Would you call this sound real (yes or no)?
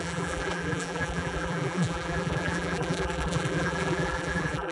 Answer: no